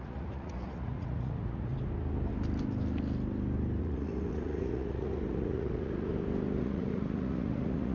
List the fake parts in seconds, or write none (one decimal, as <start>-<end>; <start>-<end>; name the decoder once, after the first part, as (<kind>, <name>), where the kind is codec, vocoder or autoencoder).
0.0-1.7 (vocoder, Vocos); 3.8-6.1; 6.6-7.9